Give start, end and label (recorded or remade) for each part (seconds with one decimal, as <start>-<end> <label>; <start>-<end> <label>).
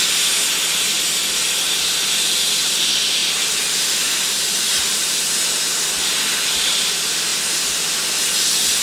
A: 0.0-3.2 recorded; 3.2-5.2 remade; 5.2-8.8 recorded